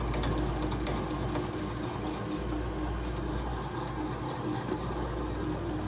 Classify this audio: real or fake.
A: real